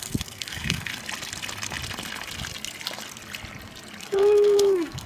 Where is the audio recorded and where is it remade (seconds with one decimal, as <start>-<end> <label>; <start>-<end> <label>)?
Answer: 0.0-0.9 remade; 0.9-4.0 recorded; 4.0-5.1 remade